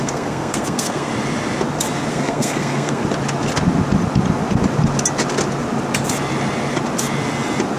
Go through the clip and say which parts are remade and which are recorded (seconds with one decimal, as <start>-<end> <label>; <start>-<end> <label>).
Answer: 0.0-1.1 remade; 1.1-2.1 recorded; 2.1-3.0 remade; 3.0-7.8 recorded